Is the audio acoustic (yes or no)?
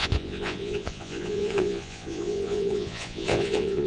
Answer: no